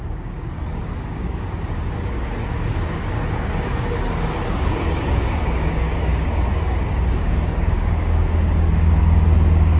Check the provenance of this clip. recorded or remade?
remade